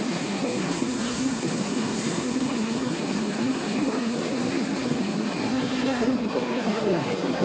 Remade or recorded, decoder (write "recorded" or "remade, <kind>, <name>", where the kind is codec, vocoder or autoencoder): remade, codec, SNAC